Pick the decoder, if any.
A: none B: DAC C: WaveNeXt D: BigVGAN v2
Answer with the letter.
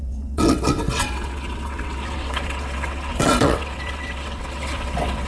C